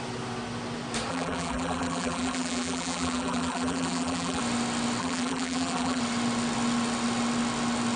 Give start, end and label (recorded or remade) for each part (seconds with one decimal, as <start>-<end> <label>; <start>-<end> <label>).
0.0-1.1 recorded; 1.1-4.4 remade; 4.4-5.0 recorded; 5.0-6.0 remade; 6.0-8.0 recorded